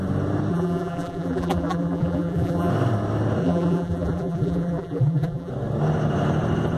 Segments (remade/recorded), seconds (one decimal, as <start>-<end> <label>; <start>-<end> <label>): 0.0-0.5 recorded; 0.5-2.7 remade; 2.7-3.4 recorded; 3.4-5.5 remade; 5.5-6.8 recorded

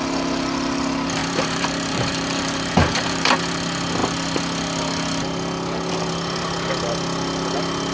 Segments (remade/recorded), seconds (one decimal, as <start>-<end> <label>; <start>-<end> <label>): 0.0-1.2 recorded; 1.2-3.4 remade; 3.4-7.9 recorded

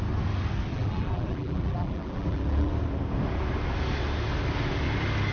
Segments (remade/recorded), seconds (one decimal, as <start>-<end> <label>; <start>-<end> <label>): 0.0-0.7 recorded; 0.7-2.7 remade; 2.7-5.3 recorded

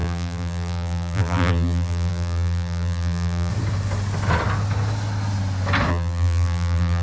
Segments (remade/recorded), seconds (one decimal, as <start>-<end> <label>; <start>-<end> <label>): 0.0-3.5 remade; 3.5-5.9 recorded; 5.9-7.0 remade

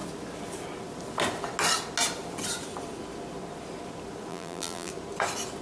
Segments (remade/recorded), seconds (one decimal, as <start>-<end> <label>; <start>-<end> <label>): 0.0-4.3 recorded; 4.3-4.9 remade; 4.9-5.6 recorded

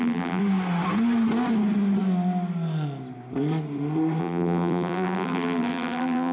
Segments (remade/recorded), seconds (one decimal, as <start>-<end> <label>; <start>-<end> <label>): 0.0-0.4 remade; 0.4-4.2 recorded; 4.2-6.3 remade

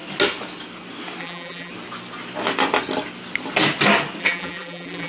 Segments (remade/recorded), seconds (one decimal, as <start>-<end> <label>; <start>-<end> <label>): 0.0-1.2 recorded; 1.2-1.7 remade; 1.7-4.2 recorded; 4.2-5.1 remade

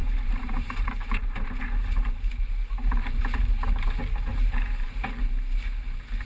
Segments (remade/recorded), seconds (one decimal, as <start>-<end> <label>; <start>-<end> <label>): 0.0-3.2 remade; 3.2-4.3 recorded; 4.3-5.2 remade; 5.2-6.2 recorded